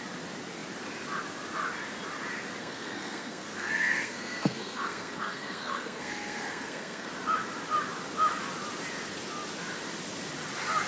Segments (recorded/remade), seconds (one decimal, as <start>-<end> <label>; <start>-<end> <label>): 0.0-2.6 recorded; 2.6-7.1 remade; 7.1-10.9 recorded